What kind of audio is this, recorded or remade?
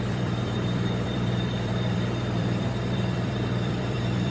remade